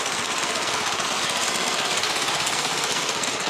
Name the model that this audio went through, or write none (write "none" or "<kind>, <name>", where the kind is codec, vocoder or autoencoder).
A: codec, SNAC